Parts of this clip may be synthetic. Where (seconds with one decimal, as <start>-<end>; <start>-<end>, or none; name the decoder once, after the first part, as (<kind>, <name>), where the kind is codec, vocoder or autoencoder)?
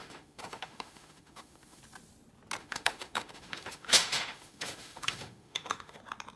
0.0-1.8 (autoencoder, DAC-VAE); 2.6-6.0